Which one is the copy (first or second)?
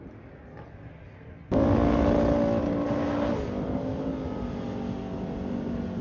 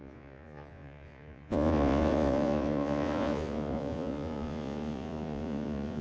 second